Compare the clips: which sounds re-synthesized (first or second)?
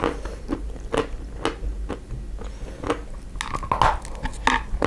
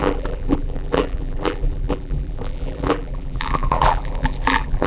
second